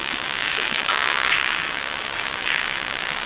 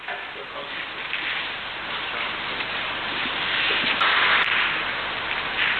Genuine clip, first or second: second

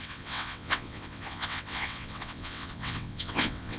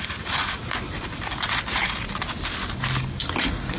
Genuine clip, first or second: second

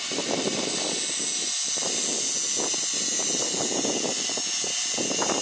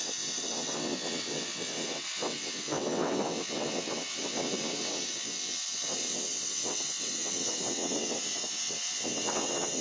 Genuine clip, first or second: first